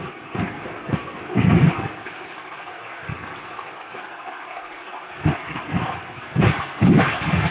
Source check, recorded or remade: remade